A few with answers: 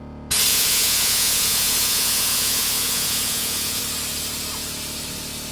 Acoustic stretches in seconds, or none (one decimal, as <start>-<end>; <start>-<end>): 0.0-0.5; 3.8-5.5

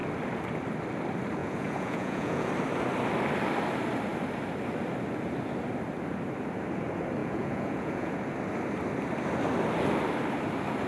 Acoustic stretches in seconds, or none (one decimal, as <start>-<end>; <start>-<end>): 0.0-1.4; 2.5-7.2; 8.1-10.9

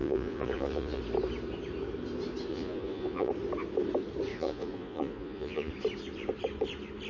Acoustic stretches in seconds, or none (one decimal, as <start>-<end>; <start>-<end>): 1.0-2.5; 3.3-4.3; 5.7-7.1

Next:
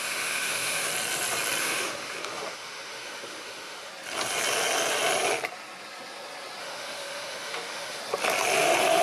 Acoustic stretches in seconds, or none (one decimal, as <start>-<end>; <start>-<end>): 0.9-1.6; 3.9-6.6; 8.0-9.0

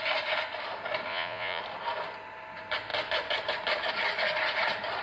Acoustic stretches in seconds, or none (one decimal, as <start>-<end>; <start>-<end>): 0.0-1.1; 1.6-5.0

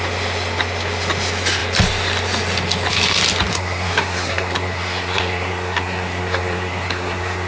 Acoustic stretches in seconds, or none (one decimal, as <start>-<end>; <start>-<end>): 0.0-3.5